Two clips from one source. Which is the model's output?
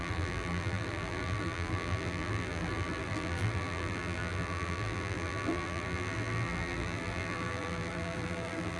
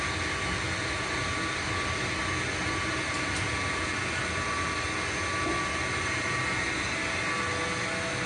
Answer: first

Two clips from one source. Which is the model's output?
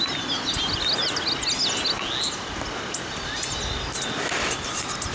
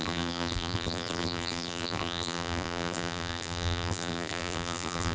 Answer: second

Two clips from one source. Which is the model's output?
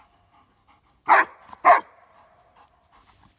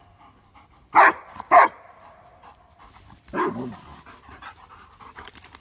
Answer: second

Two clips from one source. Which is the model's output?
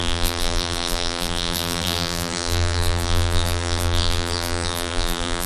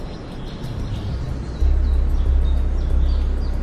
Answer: first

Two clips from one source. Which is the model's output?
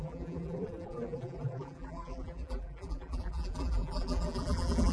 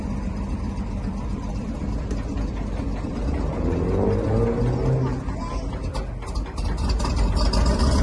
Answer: first